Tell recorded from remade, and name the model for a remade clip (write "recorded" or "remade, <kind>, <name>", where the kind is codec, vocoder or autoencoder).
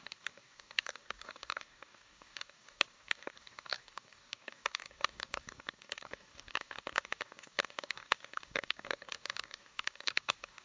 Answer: remade, codec, DAC